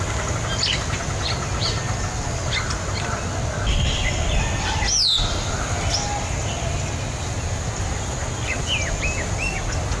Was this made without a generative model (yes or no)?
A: yes